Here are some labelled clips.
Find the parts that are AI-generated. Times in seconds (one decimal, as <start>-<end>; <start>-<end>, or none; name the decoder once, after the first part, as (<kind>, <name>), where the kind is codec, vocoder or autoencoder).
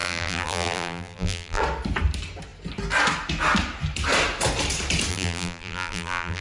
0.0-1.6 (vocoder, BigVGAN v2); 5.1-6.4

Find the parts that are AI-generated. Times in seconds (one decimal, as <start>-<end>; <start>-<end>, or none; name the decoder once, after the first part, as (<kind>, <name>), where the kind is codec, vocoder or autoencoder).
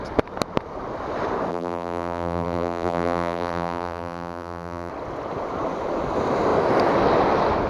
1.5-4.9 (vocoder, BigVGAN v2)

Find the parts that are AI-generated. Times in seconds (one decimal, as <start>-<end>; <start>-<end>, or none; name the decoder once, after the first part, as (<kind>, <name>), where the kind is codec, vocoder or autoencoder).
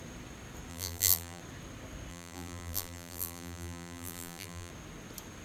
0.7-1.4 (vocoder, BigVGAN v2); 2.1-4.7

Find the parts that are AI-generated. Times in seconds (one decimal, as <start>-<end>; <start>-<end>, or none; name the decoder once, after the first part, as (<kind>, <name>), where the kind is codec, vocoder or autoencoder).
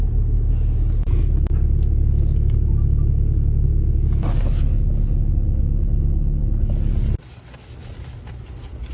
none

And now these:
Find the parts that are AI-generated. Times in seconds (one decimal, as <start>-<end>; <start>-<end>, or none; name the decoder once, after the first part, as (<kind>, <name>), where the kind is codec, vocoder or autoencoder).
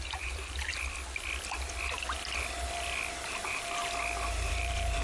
0.0-0.7 (vocoder, BigVGAN v2); 3.3-3.8; 4.3-5.0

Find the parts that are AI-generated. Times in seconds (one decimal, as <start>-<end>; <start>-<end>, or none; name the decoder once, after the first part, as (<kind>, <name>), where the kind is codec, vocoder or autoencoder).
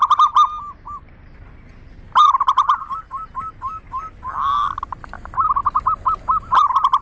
2.2-2.8 (vocoder, BigVGAN v2)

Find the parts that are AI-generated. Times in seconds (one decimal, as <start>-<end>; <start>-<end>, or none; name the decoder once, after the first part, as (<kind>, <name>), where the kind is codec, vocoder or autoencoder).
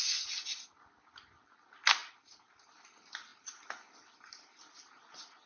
2.0-2.7 (vocoder, BigVGAN v2)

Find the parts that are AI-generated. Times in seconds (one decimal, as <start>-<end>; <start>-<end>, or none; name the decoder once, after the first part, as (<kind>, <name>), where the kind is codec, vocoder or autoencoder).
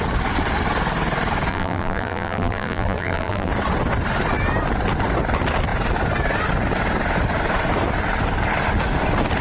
1.5-3.5 (vocoder, BigVGAN v2)